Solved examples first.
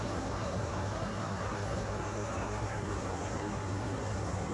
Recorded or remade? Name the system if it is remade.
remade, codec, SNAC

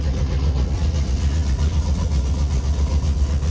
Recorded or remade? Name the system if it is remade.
remade, vocoder, Vocos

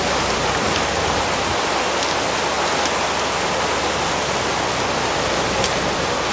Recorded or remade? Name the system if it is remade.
recorded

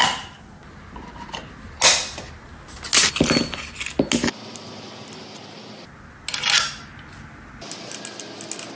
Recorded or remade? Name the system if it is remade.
recorded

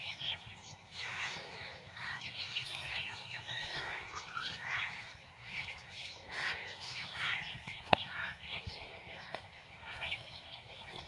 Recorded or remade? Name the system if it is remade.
remade, codec, SNAC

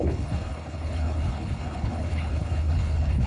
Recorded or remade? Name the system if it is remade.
remade, codec, HILCodec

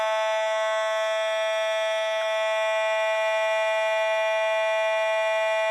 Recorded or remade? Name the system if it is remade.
recorded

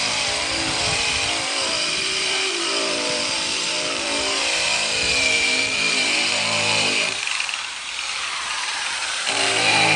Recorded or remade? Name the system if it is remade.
remade, vocoder, BigVGAN v2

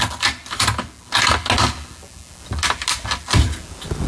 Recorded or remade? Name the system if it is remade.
recorded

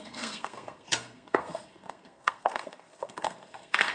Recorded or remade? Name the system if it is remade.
remade, codec, SNAC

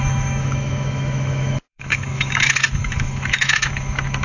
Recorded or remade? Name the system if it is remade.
remade, autoencoder, DAC-VAE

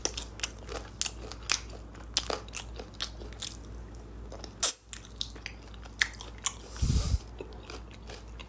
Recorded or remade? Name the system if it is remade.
recorded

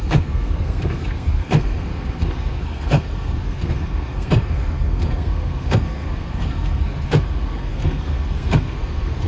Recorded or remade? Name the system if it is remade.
remade, codec, SNAC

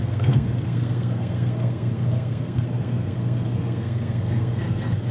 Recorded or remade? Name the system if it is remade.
remade, codec, SNAC